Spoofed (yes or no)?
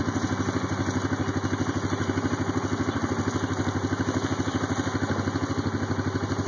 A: no